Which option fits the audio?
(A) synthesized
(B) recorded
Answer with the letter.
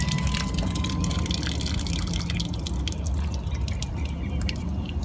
B